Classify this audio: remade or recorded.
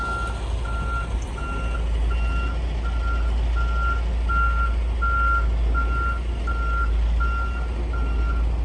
recorded